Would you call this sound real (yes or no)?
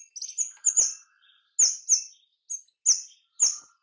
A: yes